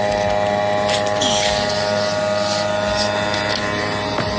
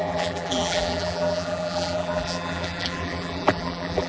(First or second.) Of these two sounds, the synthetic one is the second